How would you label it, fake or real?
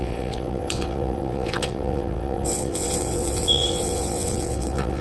fake